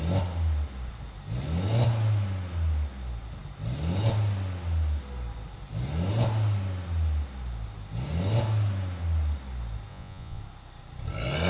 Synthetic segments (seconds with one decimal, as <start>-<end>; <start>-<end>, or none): 9.9-10.4